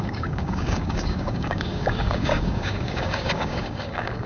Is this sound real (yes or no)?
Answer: no